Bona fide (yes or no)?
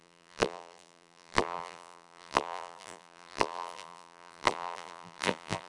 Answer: no